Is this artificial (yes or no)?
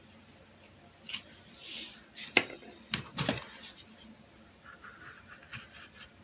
no